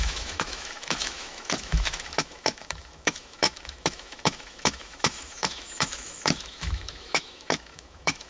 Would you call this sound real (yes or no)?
no